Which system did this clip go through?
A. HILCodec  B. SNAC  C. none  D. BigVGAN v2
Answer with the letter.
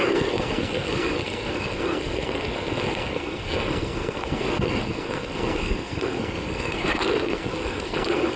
B